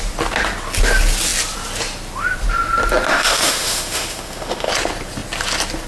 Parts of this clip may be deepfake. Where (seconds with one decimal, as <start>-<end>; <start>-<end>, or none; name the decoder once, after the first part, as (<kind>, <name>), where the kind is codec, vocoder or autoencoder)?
3.1-4.7 (autoencoder, DAC-VAE)